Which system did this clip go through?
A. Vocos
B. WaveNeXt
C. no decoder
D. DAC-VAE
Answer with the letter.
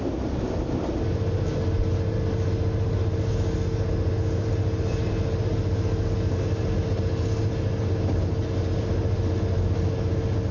C